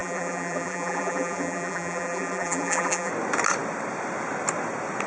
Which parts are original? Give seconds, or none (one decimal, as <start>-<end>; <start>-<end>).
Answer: 3.1-5.1